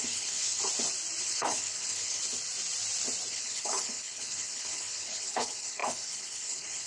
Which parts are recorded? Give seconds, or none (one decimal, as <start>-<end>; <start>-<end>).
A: 0.6-1.2; 2.2-3.3